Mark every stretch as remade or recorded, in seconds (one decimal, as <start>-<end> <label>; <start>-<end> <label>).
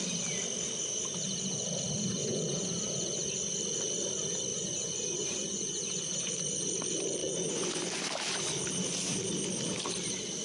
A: 0.0-2.2 recorded; 2.2-2.8 remade; 2.8-4.5 recorded; 4.5-6.3 remade; 6.3-7.2 recorded; 7.2-7.8 remade; 7.8-10.4 recorded